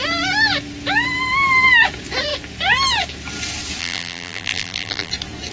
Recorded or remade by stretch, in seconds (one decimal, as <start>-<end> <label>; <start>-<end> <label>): 0.0-3.8 recorded; 3.8-5.1 remade; 5.1-5.5 recorded